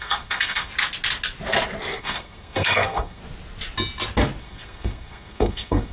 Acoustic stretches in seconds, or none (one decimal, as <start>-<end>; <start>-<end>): 0.7-2.0; 3.2-4.4